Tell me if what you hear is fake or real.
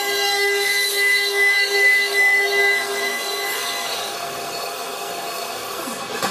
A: fake